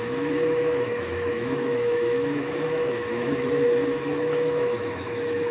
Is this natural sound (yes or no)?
no